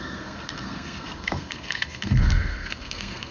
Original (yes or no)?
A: no